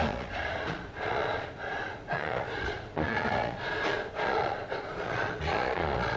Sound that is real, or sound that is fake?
fake